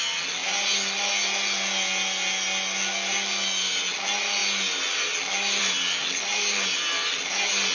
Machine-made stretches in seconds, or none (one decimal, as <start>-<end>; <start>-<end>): none